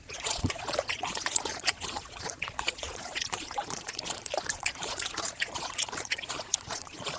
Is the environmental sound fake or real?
fake